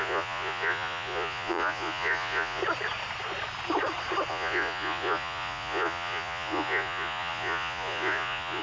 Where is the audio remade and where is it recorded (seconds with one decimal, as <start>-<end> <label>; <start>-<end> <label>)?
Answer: 0.0-2.6 remade; 2.6-4.3 recorded; 4.3-8.6 remade